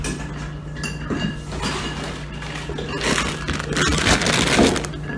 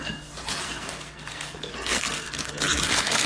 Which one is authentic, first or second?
first